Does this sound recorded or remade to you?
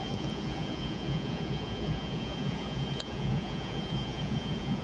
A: remade